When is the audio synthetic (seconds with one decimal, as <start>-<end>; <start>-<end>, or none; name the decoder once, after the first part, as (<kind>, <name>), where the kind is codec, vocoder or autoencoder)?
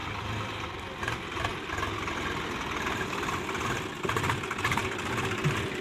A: none